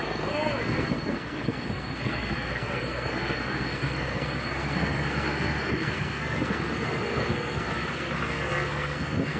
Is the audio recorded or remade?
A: remade